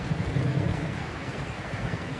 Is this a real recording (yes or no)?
no